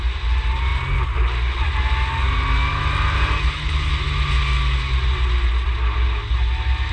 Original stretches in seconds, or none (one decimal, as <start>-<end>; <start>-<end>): 0.0-6.9